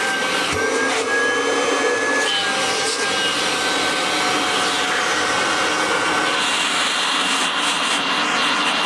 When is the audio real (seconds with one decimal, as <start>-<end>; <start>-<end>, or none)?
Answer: 0.0-8.9